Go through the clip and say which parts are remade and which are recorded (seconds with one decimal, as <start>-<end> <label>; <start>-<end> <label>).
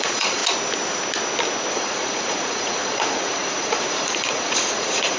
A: 0.0-0.4 remade; 0.4-1.7 recorded; 1.7-5.2 remade